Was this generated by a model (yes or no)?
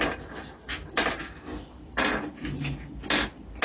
no